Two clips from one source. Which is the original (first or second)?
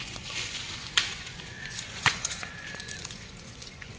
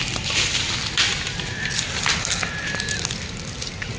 second